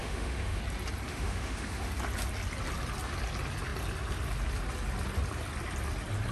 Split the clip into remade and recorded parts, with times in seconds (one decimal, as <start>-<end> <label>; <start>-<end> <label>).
0.0-0.6 remade; 0.6-1.1 recorded; 1.1-1.9 remade; 1.9-6.3 recorded